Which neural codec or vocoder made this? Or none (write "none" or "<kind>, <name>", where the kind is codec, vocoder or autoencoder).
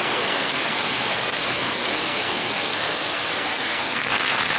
codec, SNAC